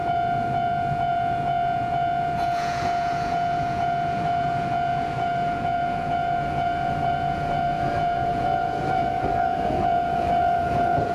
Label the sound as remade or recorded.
remade